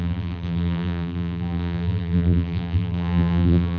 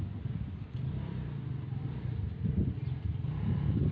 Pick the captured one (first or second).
second